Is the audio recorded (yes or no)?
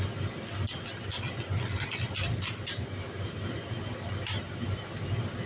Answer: yes